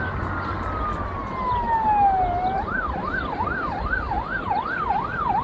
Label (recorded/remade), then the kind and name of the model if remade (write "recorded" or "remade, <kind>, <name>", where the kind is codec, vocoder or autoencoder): recorded